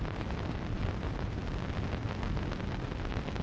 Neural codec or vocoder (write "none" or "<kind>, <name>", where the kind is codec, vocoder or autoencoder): none